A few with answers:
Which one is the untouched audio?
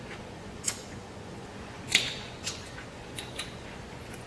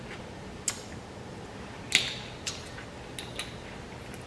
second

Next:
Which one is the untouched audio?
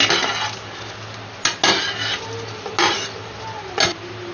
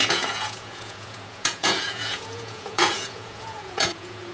first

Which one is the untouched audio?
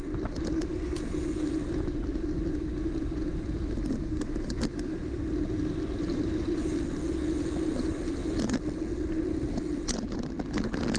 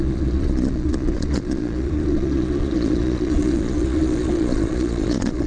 first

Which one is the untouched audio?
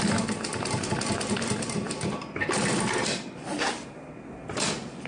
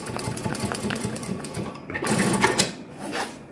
first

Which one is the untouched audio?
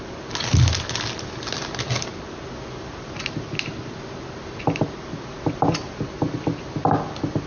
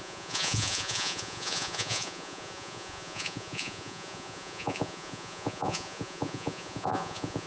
first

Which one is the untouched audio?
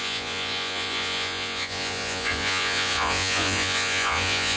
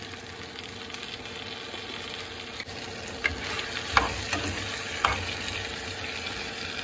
second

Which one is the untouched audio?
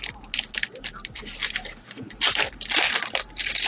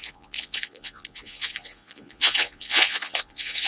first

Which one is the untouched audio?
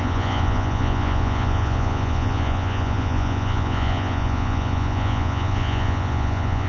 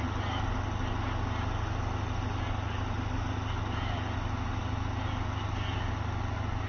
second